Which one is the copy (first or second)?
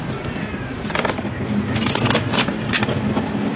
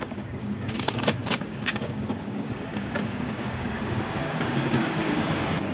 second